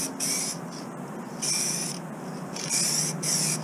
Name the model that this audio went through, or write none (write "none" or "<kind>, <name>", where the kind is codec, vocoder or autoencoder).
none